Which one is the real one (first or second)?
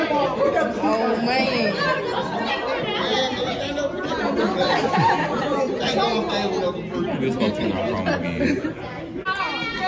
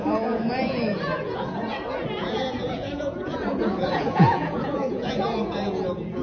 first